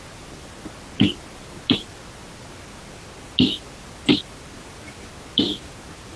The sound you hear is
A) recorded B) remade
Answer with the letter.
A